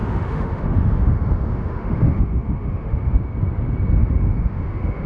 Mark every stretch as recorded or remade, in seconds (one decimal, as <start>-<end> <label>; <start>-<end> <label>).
0.0-3.1 remade; 3.1-4.0 recorded; 4.0-5.1 remade